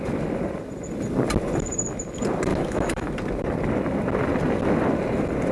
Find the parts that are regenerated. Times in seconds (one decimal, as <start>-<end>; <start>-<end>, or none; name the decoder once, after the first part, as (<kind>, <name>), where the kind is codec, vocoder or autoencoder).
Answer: 2.5-3.1 (autoencoder, DAC-VAE)